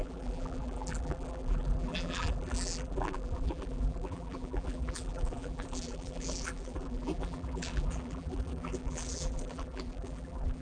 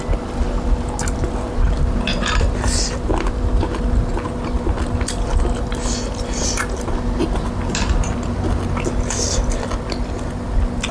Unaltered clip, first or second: second